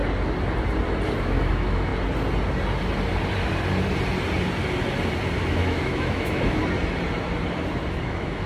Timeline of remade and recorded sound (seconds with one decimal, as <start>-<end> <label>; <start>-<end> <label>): 0.0-1.2 recorded; 1.2-1.9 remade; 1.9-5.5 recorded; 5.5-6.6 remade; 6.6-7.9 recorded; 7.9-8.5 remade